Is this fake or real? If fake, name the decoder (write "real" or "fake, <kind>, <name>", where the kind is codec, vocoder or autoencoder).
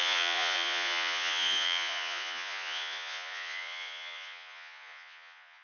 fake, vocoder, Vocos